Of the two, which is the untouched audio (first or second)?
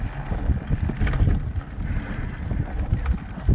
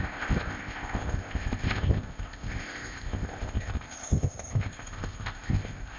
first